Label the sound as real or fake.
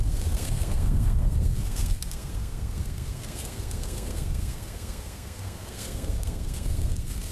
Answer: fake